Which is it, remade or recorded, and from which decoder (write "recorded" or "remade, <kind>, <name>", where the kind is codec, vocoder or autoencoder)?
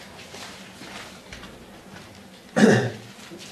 recorded